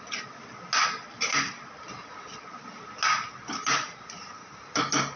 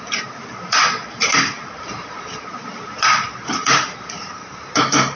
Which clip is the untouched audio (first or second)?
first